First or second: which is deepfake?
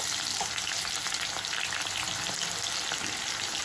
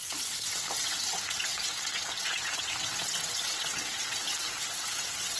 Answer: second